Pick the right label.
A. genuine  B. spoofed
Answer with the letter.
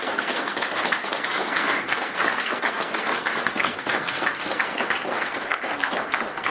B